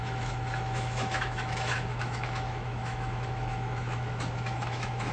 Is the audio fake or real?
fake